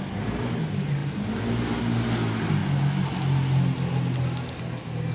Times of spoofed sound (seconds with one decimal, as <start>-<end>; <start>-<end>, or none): none